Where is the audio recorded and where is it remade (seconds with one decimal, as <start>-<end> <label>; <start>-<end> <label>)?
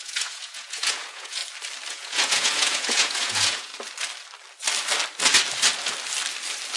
0.0-1.4 remade; 1.4-1.9 recorded; 1.9-3.7 remade; 3.7-6.8 recorded